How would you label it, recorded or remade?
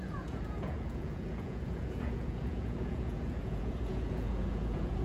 remade